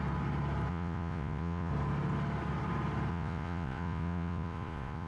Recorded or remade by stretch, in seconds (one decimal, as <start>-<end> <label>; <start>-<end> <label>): 0.0-0.7 recorded; 0.7-1.7 remade; 1.7-3.1 recorded; 3.1-5.1 remade